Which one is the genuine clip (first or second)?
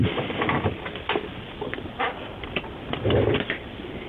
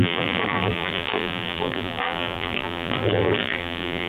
first